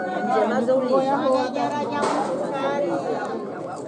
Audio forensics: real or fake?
real